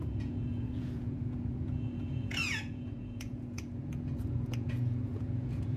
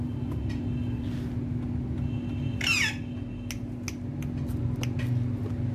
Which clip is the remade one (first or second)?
first